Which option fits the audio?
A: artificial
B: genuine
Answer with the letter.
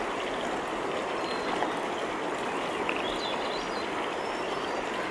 B